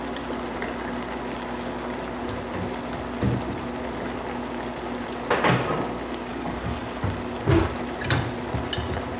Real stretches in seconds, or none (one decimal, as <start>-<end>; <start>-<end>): 0.0-6.3; 7.0-9.2